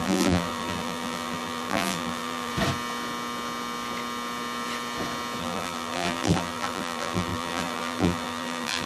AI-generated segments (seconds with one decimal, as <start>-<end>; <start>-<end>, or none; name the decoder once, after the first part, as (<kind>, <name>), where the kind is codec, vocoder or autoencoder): 0.0-2.5 (vocoder, BigVGAN v2); 5.4-8.9